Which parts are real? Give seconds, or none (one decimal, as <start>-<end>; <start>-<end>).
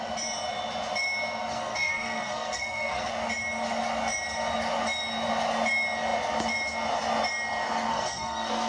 0.0-1.5; 3.1-7.9